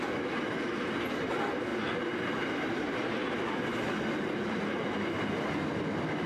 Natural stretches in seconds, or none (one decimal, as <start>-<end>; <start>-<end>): 0.0-1.7; 5.5-6.3